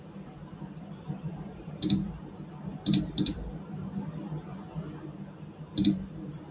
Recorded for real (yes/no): no